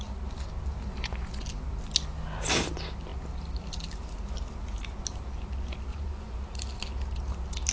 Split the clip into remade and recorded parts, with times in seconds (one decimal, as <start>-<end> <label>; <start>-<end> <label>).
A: 0.0-0.9 recorded; 0.9-1.4 remade; 1.4-5.9 recorded; 5.9-6.4 remade; 6.4-7.7 recorded